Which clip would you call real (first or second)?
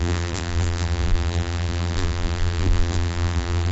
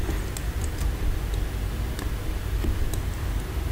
second